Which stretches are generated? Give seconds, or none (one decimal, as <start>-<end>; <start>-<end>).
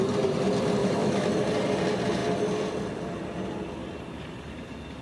0.8-1.3